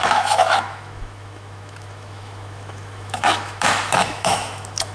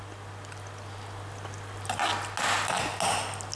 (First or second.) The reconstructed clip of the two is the first